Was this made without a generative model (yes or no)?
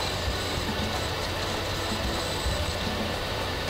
no